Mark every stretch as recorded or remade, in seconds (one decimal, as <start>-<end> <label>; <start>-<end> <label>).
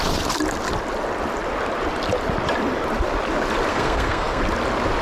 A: 0.0-3.7 recorded; 3.7-4.4 remade; 4.4-5.0 recorded